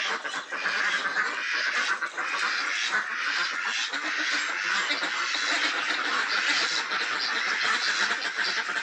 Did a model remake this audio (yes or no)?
no